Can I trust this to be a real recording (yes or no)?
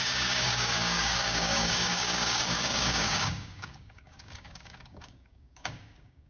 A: no